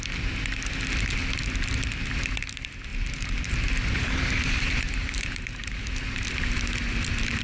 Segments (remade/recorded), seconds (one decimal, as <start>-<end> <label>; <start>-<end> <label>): 0.0-2.9 recorded; 2.9-5.8 remade; 5.8-7.4 recorded